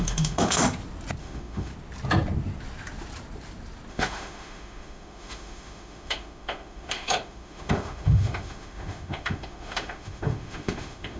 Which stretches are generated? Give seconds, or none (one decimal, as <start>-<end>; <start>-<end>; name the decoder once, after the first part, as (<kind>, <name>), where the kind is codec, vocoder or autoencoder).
0.0-0.6 (autoencoder, DAC-VAE); 1.2-1.7; 3.9-11.2